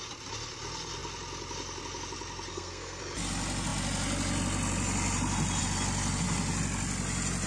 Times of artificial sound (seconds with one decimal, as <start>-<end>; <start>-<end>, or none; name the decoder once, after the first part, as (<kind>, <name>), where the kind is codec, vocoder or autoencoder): 2.5-3.0 (codec, SNAC)